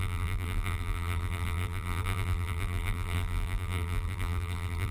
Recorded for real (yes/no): no